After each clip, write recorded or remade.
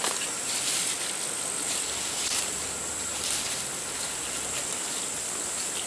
recorded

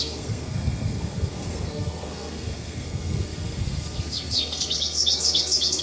remade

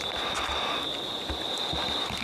recorded